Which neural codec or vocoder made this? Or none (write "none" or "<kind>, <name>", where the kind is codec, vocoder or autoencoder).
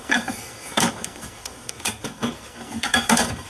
codec, SNAC